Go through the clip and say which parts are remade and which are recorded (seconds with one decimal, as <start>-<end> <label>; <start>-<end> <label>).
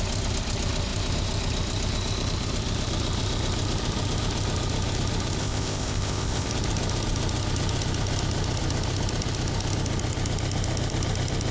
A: 0.0-5.4 recorded; 5.4-6.5 remade; 6.5-11.5 recorded